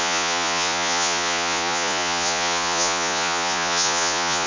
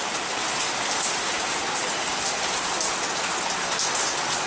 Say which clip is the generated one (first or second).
first